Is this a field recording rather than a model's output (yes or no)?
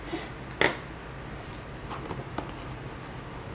yes